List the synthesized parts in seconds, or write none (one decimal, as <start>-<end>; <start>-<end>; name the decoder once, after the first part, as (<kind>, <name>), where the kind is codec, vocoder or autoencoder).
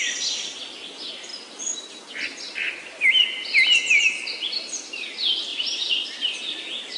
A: 5.5-6.3 (vocoder, BigVGAN v2)